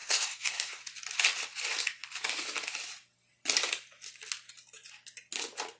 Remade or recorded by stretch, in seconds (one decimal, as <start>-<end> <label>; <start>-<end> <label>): 0.0-0.8 remade; 0.8-5.8 recorded